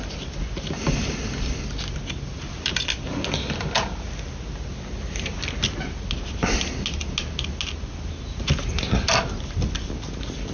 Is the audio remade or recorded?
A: recorded